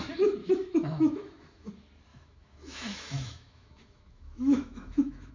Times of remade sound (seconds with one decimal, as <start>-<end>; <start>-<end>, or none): 0.4-1.7; 2.1-5.3